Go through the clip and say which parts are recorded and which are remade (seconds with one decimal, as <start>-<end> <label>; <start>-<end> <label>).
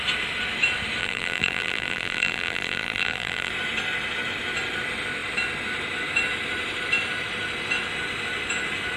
0.0-1.0 recorded; 1.0-3.5 remade; 3.5-9.0 recorded